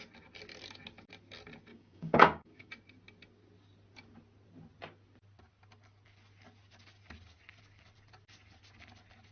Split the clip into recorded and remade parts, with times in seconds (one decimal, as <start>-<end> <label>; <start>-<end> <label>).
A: 0.0-1.7 recorded; 1.7-2.7 remade; 2.7-9.3 recorded